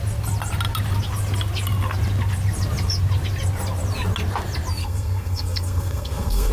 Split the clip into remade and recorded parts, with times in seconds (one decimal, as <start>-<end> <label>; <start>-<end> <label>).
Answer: 0.0-4.8 recorded; 4.8-6.5 remade